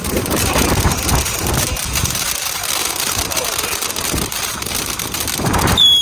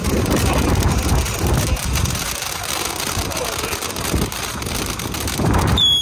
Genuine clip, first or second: second